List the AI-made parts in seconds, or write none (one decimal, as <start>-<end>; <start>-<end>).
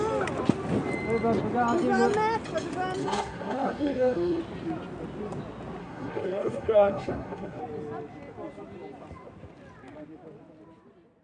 3.0-4.4; 5.8-7.6